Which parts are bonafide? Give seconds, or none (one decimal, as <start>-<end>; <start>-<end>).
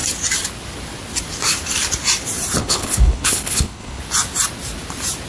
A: 0.0-2.6; 4.0-5.3